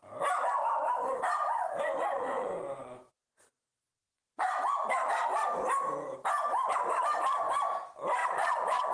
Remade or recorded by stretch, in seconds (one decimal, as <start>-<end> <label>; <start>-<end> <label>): 0.0-2.1 recorded; 2.1-4.5 remade; 4.5-8.2 recorded; 8.2-8.9 remade